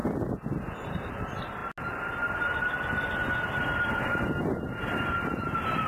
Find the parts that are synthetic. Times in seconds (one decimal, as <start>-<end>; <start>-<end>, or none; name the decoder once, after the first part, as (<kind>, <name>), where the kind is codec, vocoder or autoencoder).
1.2-1.6 (vocoder, BigVGAN v2); 5.1-5.9